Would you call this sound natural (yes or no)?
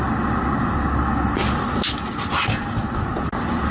yes